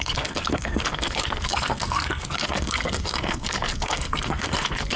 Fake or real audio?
fake